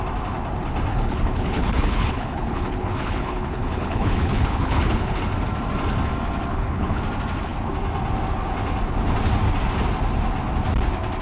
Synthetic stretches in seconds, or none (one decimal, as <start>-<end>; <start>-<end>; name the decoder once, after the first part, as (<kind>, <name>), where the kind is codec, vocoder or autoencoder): 0.9-5.2 (codec, HILCodec); 6.5-7.0